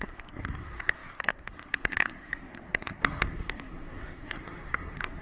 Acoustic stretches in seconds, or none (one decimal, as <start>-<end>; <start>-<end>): none